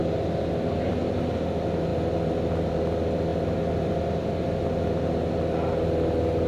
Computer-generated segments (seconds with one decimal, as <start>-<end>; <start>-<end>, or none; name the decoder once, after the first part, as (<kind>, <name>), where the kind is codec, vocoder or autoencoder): none